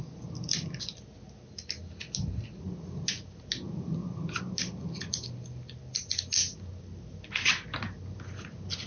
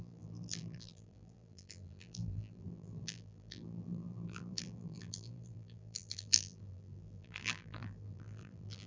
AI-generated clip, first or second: second